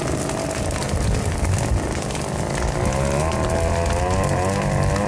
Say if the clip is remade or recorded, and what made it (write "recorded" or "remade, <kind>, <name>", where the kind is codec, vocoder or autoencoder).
recorded